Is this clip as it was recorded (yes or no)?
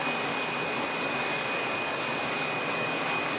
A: no